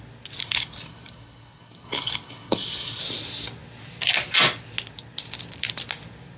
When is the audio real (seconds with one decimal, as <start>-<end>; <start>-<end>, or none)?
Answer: 0.0-0.4; 3.0-6.4